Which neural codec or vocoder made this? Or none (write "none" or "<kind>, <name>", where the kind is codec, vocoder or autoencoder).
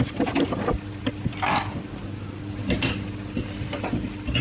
vocoder, BigVGAN v2